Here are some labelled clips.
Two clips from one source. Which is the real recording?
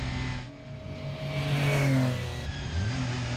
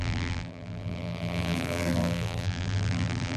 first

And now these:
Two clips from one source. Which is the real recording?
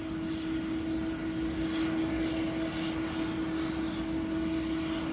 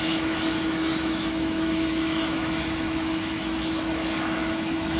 first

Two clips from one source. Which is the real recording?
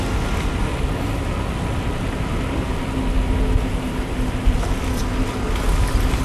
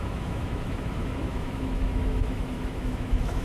first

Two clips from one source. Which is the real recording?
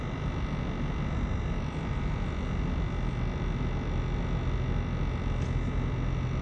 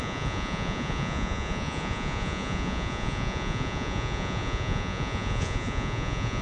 first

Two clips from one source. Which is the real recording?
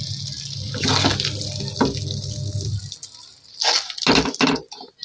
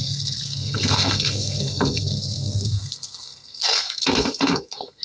first